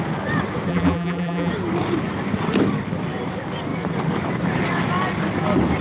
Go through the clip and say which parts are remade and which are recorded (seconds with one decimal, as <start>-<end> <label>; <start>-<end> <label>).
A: 0.0-0.7 recorded; 0.7-1.5 remade; 1.5-5.8 recorded